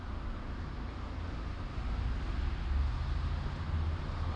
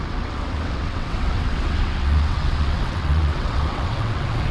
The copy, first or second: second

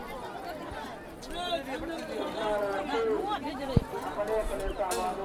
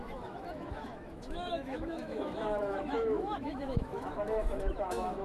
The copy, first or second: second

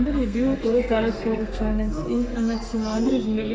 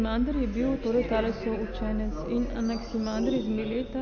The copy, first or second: first